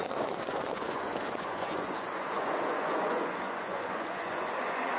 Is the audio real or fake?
fake